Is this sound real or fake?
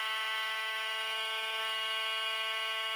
fake